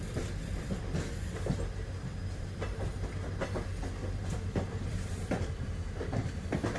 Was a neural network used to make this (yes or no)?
no